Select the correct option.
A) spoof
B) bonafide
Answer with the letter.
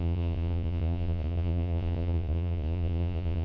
A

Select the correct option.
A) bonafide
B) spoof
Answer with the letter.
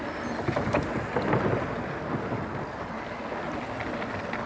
A